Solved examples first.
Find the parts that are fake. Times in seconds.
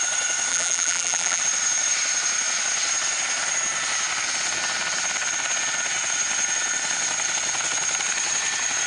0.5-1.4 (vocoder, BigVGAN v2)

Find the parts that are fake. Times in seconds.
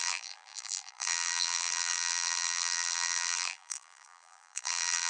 0.0-5.1 (vocoder, BigVGAN v2)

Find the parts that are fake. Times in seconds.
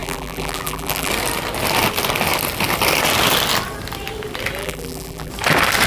0.0-1.1 (vocoder, BigVGAN v2); 4.6-5.3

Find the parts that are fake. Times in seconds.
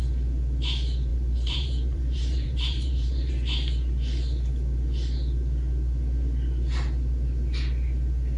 1.1-3.3 (vocoder, BigVGAN v2)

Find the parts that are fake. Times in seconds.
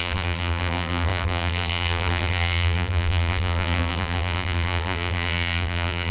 0.0-6.1 (vocoder, BigVGAN v2)